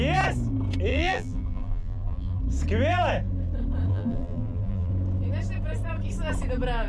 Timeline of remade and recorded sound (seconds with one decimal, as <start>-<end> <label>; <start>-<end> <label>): 0.0-0.9 recorded; 0.9-2.4 remade; 2.4-3.9 recorded; 3.9-4.9 remade; 4.9-6.9 recorded

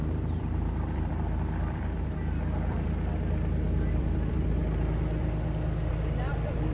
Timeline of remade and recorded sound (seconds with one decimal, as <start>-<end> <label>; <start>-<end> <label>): 0.0-4.6 remade; 4.6-5.9 recorded; 5.9-6.7 remade

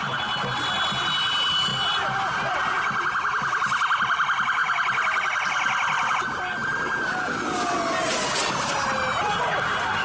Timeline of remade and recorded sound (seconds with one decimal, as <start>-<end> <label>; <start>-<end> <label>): 0.0-6.6 recorded; 6.6-7.4 remade; 7.4-10.0 recorded

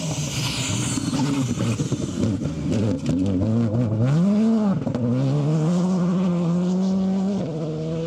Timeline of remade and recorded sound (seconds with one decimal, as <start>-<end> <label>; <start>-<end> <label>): 0.0-8.1 recorded

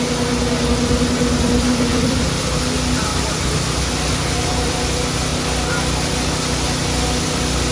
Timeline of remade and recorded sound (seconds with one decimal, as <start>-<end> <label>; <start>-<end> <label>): 0.0-1.9 recorded; 1.9-2.6 remade; 2.6-7.7 recorded

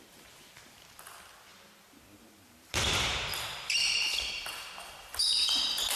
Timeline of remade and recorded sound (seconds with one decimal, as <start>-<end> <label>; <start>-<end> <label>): 0.0-6.0 remade

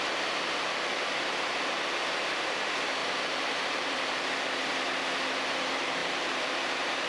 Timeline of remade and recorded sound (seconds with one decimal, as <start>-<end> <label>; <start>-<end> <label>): 0.0-3.0 recorded; 3.0-4.2 remade; 4.2-6.0 recorded; 6.0-7.1 remade

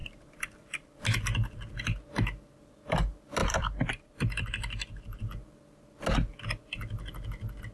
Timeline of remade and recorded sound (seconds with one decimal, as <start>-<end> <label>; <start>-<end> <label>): 0.0-1.2 remade; 1.2-3.4 recorded; 3.4-5.2 remade; 5.2-7.7 recorded